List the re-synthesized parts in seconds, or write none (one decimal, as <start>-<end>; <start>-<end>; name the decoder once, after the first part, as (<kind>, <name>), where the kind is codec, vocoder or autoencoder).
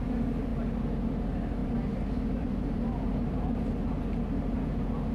1.6-4.0 (vocoder, BigVGAN v2)